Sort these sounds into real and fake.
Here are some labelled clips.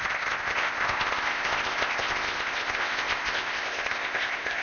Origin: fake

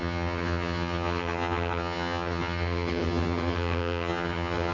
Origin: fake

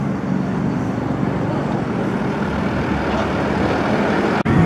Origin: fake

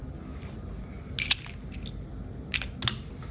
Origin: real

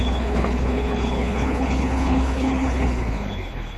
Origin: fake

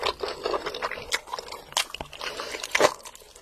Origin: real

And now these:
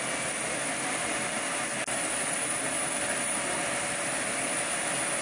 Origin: real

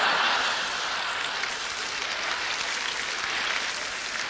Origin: real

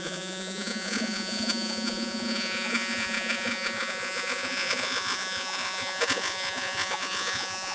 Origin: fake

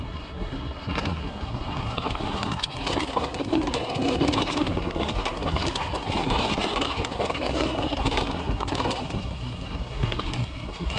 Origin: fake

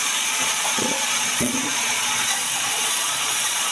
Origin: fake